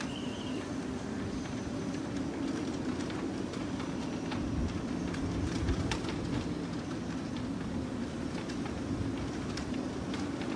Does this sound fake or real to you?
real